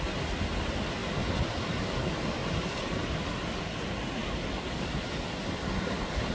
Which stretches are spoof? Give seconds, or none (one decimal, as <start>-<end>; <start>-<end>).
none